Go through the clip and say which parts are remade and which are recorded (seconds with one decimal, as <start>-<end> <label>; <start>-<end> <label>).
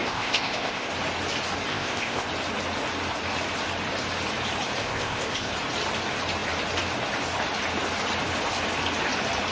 0.0-0.9 remade; 0.9-1.7 recorded; 1.7-2.3 remade; 2.3-4.8 recorded; 4.8-5.5 remade; 5.5-9.5 recorded